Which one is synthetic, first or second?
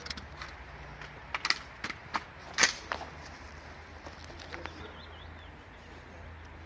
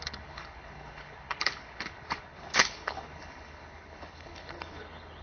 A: second